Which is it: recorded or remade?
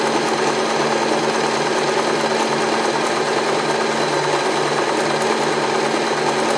recorded